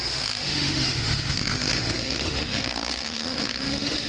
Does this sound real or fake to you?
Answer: fake